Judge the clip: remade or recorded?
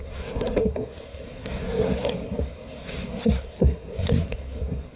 remade